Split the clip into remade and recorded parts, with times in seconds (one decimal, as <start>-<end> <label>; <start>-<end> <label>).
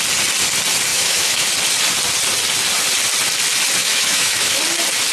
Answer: 0.0-0.9 recorded; 0.9-1.5 remade; 1.5-3.8 recorded; 3.8-4.6 remade; 4.6-5.1 recorded